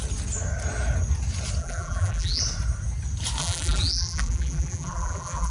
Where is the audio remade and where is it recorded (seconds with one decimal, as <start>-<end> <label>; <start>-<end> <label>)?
0.0-1.6 recorded; 1.6-2.4 remade; 2.4-3.4 recorded; 3.4-5.5 remade